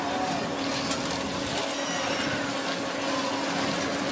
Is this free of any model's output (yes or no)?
yes